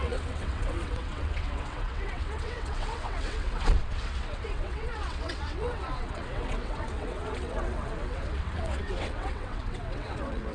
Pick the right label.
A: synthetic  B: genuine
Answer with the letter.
A